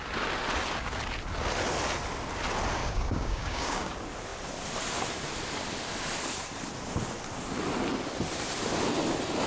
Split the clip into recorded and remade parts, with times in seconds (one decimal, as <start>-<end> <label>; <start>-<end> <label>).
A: 0.0-2.8 recorded; 2.8-3.9 remade; 3.9-9.5 recorded